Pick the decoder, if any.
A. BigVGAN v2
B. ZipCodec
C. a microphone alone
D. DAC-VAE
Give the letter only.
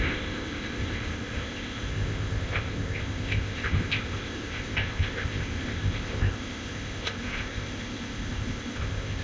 B